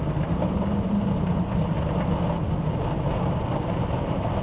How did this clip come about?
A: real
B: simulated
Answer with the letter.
A